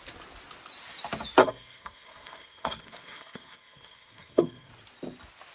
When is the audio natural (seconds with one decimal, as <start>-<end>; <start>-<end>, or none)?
0.0-1.4; 4.7-5.5